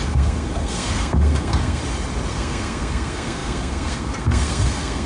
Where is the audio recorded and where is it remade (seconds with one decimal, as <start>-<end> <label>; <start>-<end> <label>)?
0.0-1.8 remade; 1.8-2.3 recorded; 2.3-5.1 remade